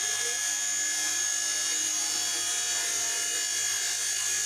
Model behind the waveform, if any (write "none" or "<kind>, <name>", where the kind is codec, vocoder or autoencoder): none